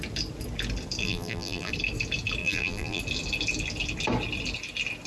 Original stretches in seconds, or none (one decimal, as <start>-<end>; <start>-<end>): 0.0-1.0; 1.7-2.4; 3.0-5.1